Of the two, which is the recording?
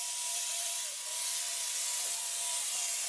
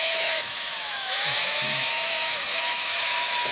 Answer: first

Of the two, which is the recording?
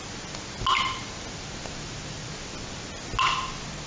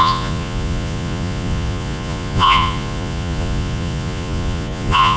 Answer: first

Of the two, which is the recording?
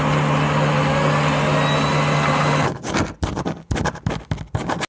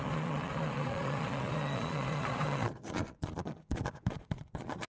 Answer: first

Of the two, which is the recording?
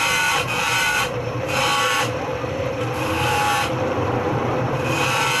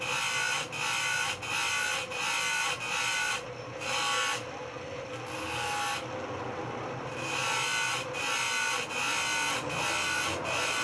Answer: second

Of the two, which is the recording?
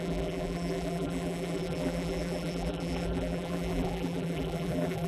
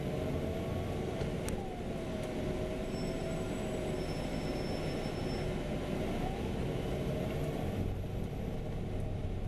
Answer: second